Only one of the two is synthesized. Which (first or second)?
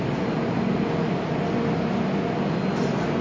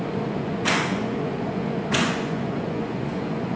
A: second